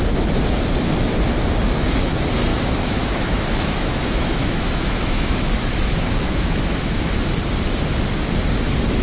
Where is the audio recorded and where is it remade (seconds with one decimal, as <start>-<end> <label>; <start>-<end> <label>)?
0.0-2.5 recorded; 2.5-7.2 remade; 7.2-9.0 recorded